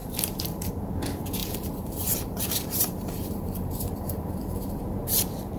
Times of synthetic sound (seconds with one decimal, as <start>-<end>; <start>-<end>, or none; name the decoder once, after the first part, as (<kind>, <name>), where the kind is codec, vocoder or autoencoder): 0.0-0.7 (vocoder, BigVGAN v2); 1.4-4.8